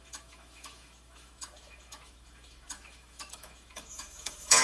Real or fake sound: fake